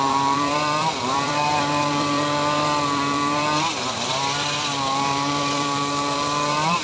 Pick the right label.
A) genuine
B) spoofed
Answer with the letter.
B